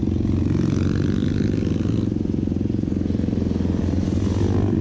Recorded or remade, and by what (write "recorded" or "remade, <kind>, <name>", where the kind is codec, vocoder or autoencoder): recorded